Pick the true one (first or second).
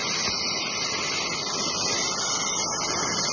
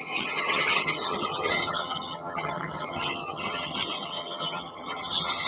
first